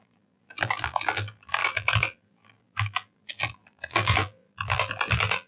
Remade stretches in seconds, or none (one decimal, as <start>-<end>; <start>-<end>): 0.0-5.5